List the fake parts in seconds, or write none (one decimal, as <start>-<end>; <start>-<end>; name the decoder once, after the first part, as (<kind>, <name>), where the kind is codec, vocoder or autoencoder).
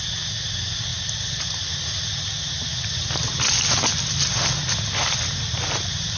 none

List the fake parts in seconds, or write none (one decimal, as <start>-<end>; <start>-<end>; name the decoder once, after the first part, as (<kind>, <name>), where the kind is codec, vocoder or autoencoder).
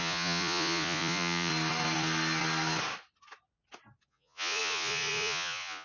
0.0-1.5 (vocoder, Vocos); 4.1-5.8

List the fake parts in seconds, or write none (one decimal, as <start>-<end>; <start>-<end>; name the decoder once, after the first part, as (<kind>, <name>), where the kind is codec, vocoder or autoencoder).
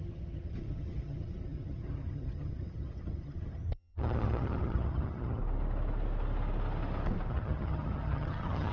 0.0-5.4 (vocoder, HiFi-GAN); 7.3-8.7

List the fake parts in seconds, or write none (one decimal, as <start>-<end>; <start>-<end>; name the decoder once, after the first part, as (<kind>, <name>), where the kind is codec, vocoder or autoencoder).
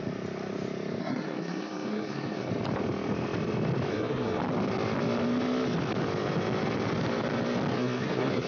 1.0-2.5 (codec, SNAC); 3.9-4.4; 7.7-8.5